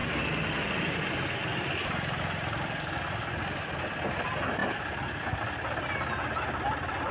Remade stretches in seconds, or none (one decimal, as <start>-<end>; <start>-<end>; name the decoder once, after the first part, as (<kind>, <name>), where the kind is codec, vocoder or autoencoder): none